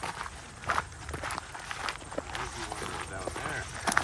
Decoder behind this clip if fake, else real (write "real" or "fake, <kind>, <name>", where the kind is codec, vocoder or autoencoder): real